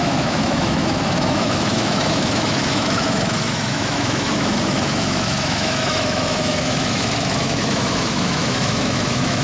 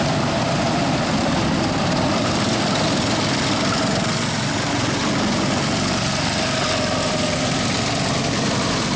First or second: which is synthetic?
first